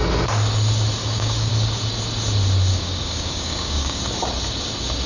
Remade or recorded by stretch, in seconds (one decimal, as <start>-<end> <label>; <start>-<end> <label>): 0.0-1.0 recorded; 1.0-1.5 remade; 1.5-2.7 recorded; 2.7-4.0 remade; 4.0-5.1 recorded